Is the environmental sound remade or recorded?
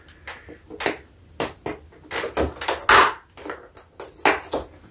recorded